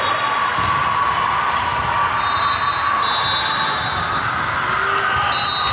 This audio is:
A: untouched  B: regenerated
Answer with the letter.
A